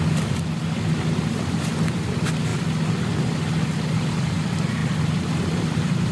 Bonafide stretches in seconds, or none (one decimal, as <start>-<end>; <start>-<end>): 0.0-6.1